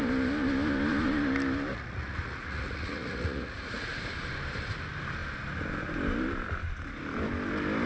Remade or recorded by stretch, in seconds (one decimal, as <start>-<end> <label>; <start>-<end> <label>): 0.0-1.7 recorded; 1.7-4.0 remade; 4.0-7.9 recorded